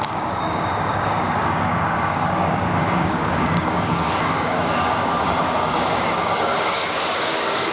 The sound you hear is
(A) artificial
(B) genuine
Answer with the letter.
A